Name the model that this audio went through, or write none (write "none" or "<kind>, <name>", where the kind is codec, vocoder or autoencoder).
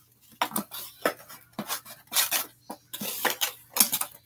none